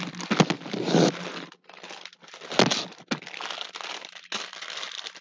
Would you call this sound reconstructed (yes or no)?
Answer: no